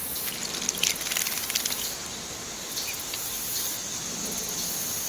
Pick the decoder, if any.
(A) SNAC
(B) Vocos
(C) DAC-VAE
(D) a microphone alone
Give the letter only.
D